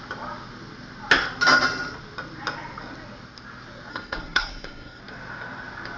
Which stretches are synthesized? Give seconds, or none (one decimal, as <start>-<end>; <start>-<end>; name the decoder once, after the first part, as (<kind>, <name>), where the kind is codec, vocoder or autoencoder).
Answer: 3.9-5.0 (codec, SNAC)